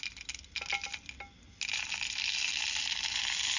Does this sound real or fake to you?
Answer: real